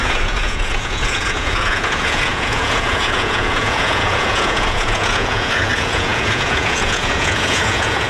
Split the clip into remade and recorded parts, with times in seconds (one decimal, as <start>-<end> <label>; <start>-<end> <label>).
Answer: 0.0-8.1 remade